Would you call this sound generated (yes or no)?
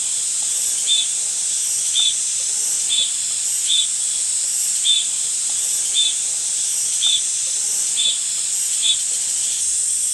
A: no